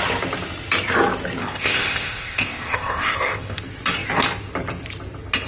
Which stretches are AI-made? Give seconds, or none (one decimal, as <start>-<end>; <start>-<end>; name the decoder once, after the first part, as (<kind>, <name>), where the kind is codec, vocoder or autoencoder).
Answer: 1.4-3.6 (codec, ZipCodec)